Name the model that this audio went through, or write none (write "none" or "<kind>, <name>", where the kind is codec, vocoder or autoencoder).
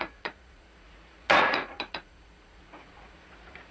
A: vocoder, Vocos